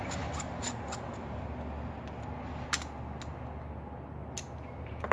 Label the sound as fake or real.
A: real